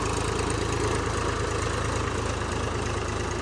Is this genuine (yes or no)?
yes